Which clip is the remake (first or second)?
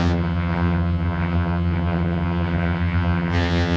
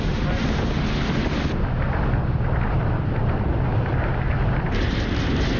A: first